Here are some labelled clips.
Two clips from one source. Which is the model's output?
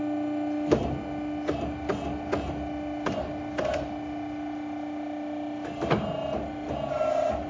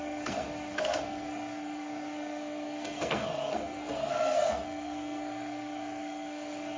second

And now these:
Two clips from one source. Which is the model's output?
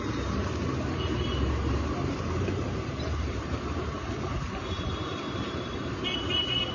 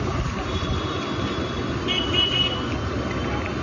first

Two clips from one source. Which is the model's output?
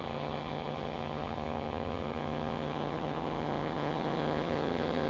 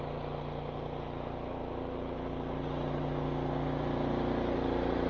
first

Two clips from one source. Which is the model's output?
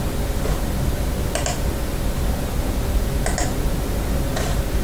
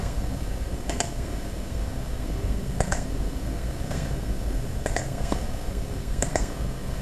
second